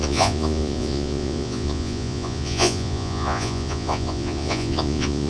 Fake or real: fake